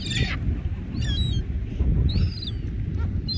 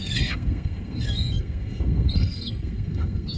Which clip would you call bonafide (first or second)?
first